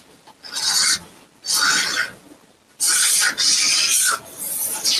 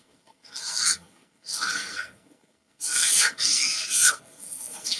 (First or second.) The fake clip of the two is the second